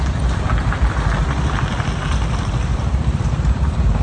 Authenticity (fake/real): fake